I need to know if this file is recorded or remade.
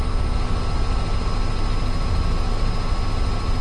recorded